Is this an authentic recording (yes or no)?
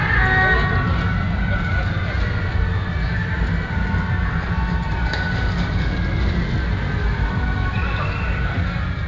yes